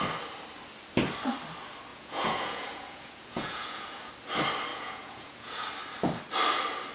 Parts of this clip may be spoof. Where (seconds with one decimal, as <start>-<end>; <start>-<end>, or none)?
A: 1.9-4.1; 4.7-5.7